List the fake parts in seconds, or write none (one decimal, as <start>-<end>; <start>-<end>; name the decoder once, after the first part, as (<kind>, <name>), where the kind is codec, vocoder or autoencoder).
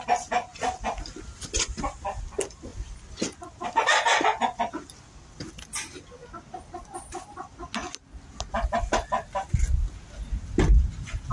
none